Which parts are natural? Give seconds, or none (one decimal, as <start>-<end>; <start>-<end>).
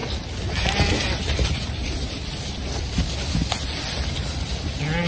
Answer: 0.0-5.1